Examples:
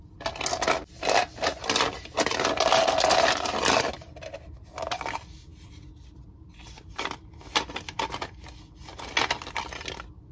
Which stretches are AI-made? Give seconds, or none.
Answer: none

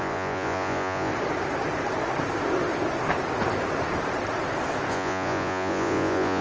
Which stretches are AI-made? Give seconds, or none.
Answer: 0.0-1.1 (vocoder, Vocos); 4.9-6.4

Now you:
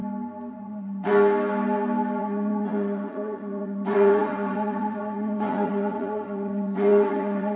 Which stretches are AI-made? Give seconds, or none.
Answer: 0.5-1.1 (vocoder, Vocos); 2.2-7.6